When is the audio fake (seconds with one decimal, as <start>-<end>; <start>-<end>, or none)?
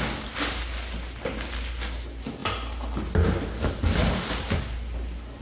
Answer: none